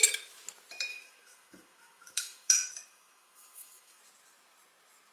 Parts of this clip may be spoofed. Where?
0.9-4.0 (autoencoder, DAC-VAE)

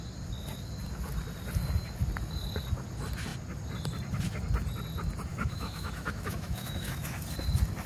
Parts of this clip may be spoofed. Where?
5.3-7.2 (autoencoder, DAC-VAE)

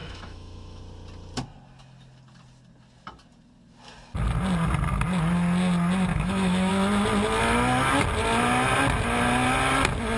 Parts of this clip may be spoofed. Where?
0.0-0.8 (autoencoder, DAC-VAE); 6.1-6.7

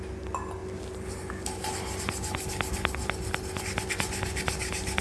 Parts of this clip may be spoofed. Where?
none

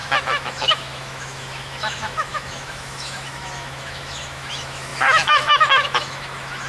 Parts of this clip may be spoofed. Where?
0.0-6.7 (autoencoder, DAC-VAE)

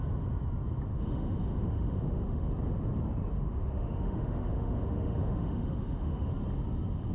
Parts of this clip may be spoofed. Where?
0.9-2.5 (autoencoder, DAC-VAE); 3.3-6.3

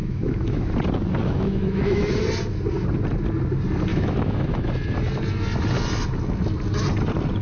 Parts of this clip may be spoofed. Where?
0.0-0.7 (autoencoder, DAC-VAE); 1.2-2.2; 3.9-4.7

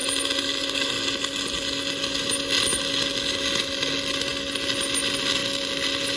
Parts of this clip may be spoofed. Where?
none